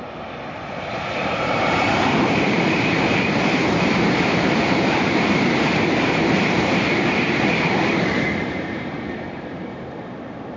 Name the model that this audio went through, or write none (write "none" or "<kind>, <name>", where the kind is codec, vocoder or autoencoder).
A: vocoder, BigVGAN v2